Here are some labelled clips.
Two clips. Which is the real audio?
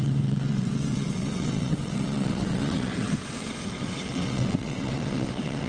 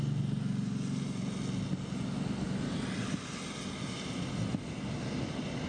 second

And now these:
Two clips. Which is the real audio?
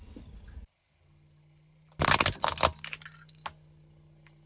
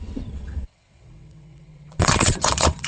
first